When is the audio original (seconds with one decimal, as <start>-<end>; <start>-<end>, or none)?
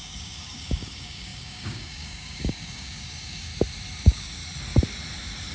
3.5-4.0; 4.4-5.5